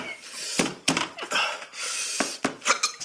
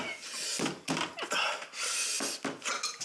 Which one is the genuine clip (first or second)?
second